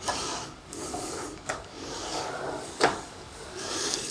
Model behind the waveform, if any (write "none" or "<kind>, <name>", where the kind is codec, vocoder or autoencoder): codec, DAC